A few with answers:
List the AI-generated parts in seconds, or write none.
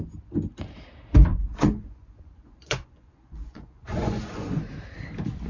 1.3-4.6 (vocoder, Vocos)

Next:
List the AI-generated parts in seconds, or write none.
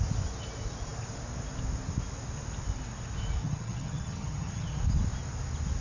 3.4-4.8 (vocoder, HiFi-GAN)